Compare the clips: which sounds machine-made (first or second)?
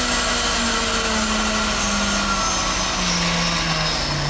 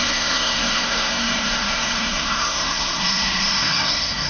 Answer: second